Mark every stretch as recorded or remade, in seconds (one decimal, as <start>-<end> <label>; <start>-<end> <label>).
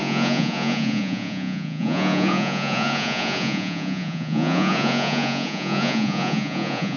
0.0-7.0 remade